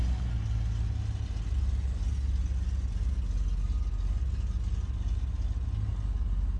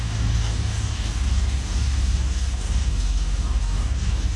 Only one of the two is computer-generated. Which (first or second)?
second